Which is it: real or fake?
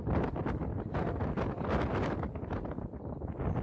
real